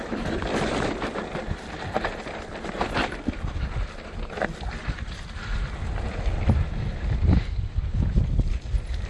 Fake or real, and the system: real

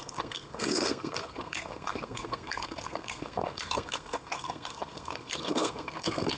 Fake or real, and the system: fake, codec, SNAC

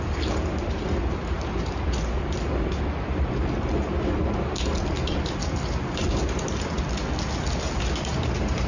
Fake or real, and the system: real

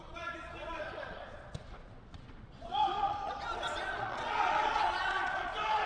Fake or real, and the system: fake, vocoder, Vocos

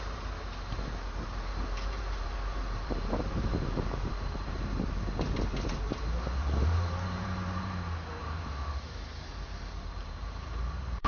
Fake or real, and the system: fake, vocoder, BigVGAN v2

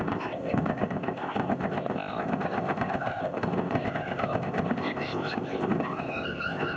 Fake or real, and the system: fake, codec, ZipCodec